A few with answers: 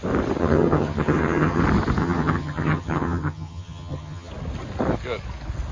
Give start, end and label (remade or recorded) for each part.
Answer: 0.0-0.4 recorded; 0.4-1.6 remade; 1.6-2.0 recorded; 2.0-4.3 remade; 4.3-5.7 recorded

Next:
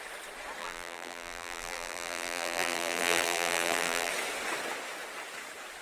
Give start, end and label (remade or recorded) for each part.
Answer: 0.0-0.6 recorded; 0.6-4.1 remade; 4.1-5.8 recorded

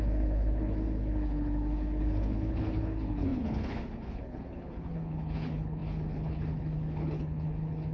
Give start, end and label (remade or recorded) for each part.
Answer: 0.0-7.9 remade

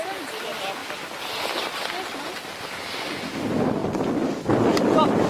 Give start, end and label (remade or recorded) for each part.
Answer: 0.0-3.8 recorded; 3.8-5.3 remade

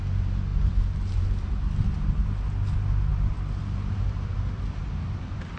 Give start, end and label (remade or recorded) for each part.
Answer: 0.0-5.6 recorded

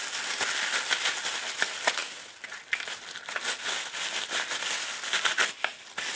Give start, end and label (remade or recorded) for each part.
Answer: 0.0-6.2 recorded

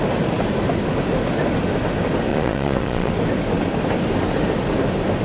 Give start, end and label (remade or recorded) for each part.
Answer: 0.0-2.3 recorded; 2.3-3.1 remade; 3.1-5.2 recorded